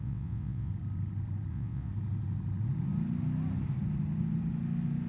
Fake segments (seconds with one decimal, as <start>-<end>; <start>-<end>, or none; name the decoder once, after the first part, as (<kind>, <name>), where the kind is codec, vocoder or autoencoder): 0.0-0.7 (vocoder, WaveNeXt); 1.5-1.9